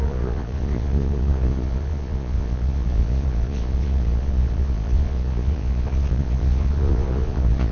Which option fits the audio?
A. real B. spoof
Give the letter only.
B